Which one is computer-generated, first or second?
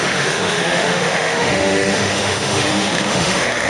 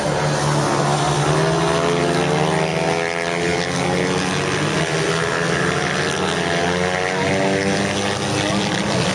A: first